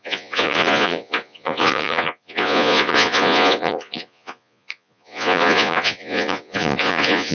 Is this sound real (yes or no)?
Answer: no